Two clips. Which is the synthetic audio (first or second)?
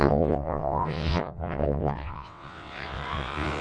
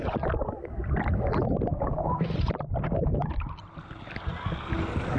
first